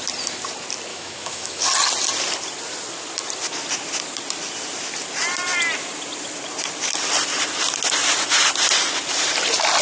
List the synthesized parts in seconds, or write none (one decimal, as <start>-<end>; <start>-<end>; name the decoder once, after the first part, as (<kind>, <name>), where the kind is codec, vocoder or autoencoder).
0.9-1.6 (autoencoder, DAC-VAE)